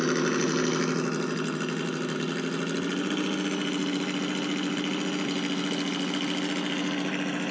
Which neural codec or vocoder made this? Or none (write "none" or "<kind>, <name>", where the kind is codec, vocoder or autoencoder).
none